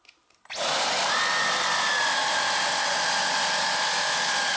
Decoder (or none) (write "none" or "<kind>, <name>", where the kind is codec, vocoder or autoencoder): none